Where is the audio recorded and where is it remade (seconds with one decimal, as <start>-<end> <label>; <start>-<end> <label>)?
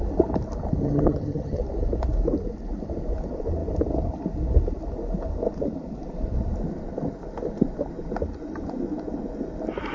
0.0-0.8 recorded; 0.8-1.6 remade; 1.6-9.9 recorded